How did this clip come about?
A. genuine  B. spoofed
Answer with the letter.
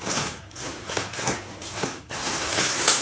B